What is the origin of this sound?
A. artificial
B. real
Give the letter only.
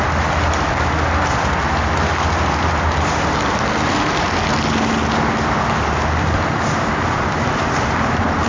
B